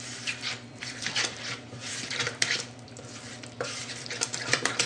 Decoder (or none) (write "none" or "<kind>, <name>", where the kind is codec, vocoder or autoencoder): vocoder, BigVGAN v2